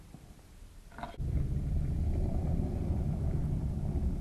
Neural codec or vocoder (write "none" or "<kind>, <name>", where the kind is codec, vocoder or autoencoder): none